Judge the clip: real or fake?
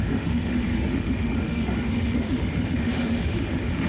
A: fake